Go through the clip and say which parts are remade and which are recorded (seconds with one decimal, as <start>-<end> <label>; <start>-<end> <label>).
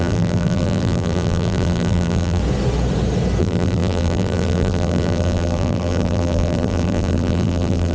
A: 0.0-2.4 remade; 2.4-3.4 recorded; 3.4-7.9 remade